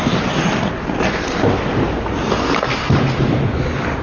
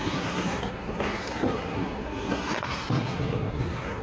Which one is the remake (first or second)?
second